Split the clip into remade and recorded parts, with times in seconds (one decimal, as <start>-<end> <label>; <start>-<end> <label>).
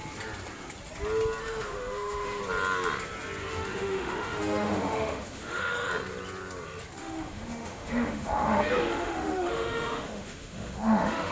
0.0-1.4 recorded; 1.4-2.4 remade; 2.4-3.4 recorded; 3.4-5.9 remade; 5.9-7.0 recorded; 7.0-11.3 remade